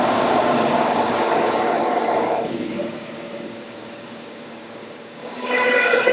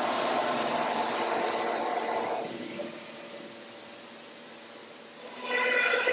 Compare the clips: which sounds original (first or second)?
second